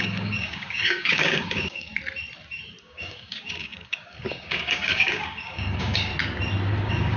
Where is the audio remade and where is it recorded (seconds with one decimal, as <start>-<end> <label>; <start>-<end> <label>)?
0.0-1.9 remade; 1.9-2.8 recorded; 2.8-6.1 remade; 6.1-6.8 recorded; 6.8-7.2 remade